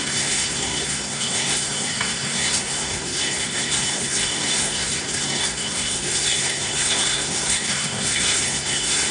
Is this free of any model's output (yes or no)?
no